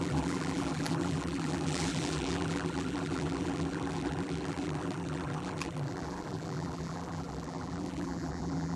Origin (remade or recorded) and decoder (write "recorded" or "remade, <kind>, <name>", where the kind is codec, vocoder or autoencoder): remade, vocoder, BigVGAN v2